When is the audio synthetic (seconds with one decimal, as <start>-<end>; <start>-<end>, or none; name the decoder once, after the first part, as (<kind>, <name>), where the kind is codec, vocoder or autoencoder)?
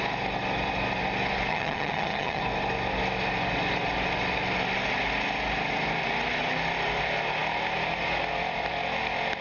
1.5-2.4 (vocoder, HiFi-GAN)